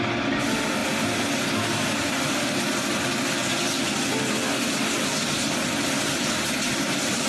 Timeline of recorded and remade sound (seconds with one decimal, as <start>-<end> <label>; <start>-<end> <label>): 0.0-7.3 recorded